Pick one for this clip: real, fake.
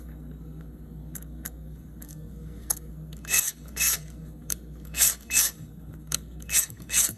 fake